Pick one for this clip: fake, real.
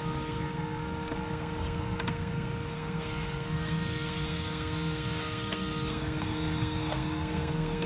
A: fake